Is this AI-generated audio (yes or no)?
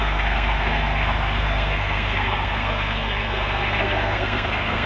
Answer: yes